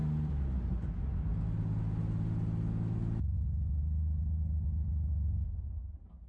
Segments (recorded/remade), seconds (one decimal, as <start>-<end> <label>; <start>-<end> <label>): 0.0-6.3 recorded